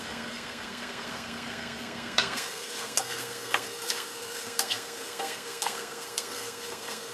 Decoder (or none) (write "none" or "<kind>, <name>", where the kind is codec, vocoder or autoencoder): codec, SNAC